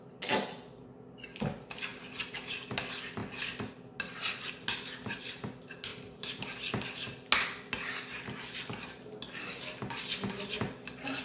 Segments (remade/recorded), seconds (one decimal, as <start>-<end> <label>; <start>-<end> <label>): 0.0-5.9 recorded; 5.9-6.4 remade; 6.4-11.2 recorded